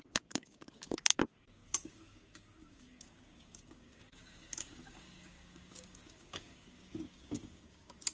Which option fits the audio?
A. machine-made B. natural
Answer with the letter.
A